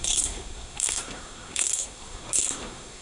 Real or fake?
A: fake